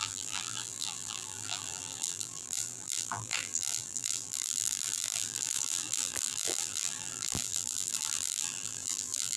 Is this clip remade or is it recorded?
remade